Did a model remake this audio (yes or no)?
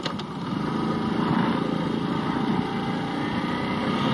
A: no